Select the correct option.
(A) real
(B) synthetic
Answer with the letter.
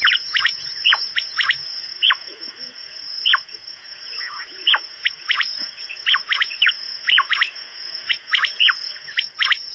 B